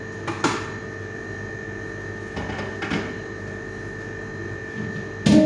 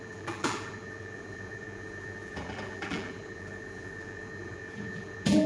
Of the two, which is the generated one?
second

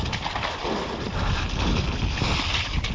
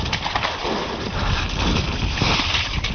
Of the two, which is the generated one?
second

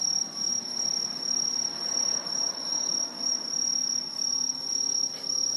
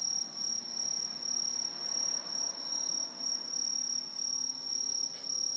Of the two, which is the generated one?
first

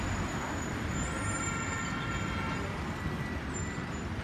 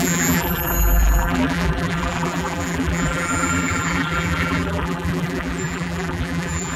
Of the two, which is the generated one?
second